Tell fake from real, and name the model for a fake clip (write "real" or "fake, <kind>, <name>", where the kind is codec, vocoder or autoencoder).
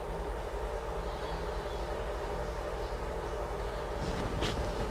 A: real